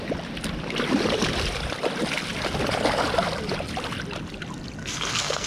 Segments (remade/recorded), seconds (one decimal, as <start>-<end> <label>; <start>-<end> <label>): 0.0-4.8 recorded; 4.8-5.5 remade